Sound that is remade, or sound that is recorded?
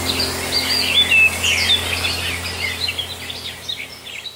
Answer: recorded